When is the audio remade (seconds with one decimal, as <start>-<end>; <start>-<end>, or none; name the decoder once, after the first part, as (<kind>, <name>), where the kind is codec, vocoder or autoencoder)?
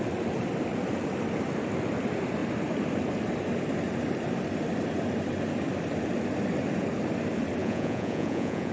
7.6-8.7 (vocoder, Vocos)